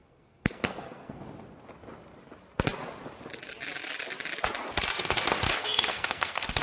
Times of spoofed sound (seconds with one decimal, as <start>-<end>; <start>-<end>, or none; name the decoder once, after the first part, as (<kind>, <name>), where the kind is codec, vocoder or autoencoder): 0.0-1.2 (codec, SNAC); 5.6-6.6